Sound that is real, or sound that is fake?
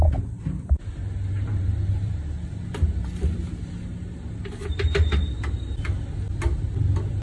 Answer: real